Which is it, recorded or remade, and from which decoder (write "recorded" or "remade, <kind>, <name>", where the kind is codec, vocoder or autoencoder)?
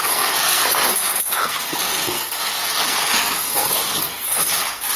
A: remade, codec, SNAC